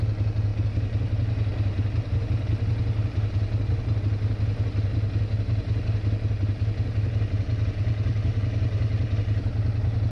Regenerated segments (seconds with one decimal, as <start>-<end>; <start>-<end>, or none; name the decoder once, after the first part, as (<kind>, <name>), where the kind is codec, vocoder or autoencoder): none